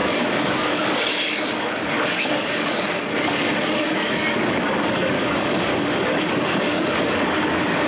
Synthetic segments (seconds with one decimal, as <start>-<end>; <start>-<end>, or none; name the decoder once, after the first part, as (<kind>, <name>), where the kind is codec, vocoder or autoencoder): 0.0-7.9 (codec, DAC)